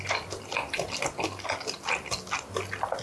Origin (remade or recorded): recorded